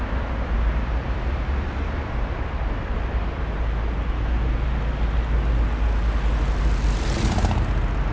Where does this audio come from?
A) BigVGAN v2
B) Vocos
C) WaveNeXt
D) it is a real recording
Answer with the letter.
D